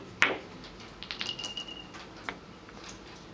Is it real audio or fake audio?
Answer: real